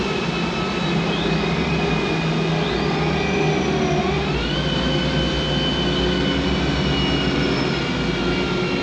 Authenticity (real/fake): real